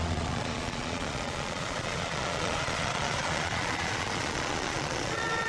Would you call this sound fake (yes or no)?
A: yes